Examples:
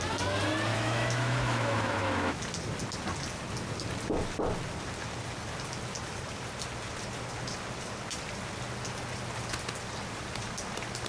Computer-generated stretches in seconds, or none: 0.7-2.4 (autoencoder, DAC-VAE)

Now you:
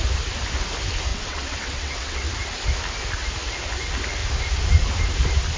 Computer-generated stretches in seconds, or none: 1.1-2.3 (vocoder, WaveNeXt)

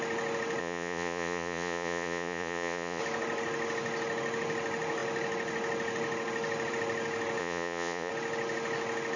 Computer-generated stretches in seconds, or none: 0.6-3.0 (vocoder, Vocos); 7.4-8.1

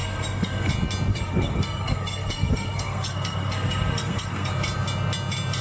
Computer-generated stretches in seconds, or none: 0.0-0.7 (codec, SNAC); 1.1-4.5